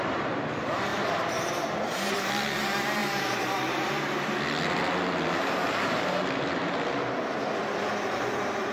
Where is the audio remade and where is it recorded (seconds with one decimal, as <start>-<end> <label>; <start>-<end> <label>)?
0.0-0.9 recorded; 0.9-2.3 remade; 2.3-3.0 recorded; 3.0-4.4 remade; 4.4-8.7 recorded